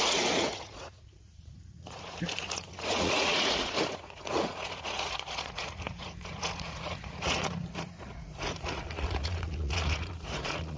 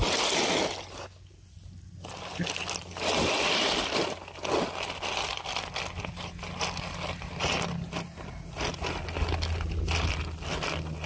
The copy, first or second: first